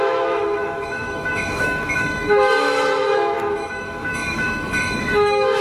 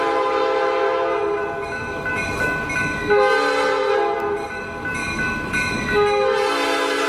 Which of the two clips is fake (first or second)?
first